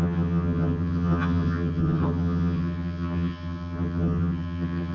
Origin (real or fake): fake